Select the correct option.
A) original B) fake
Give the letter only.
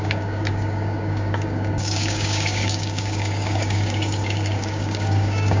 B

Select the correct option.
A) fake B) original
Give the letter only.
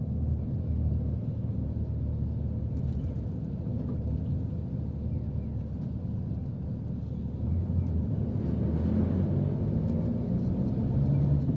B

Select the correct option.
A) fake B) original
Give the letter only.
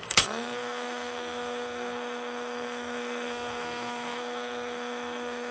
A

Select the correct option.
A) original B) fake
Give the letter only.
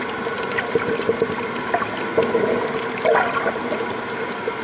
A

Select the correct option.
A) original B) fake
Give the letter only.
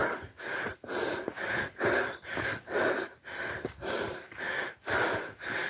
A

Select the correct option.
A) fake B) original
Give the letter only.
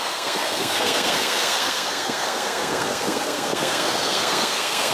A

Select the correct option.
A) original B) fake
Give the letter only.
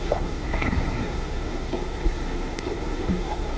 B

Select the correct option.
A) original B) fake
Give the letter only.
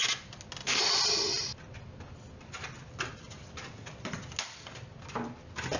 A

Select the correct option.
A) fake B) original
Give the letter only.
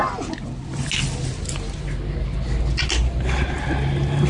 B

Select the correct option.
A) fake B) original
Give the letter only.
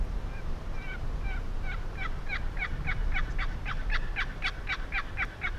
B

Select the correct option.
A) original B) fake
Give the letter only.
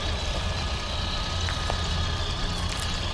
A